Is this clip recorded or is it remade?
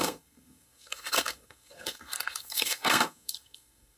remade